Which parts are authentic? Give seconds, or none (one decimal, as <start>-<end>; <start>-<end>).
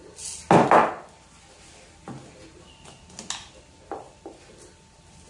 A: 0.0-5.3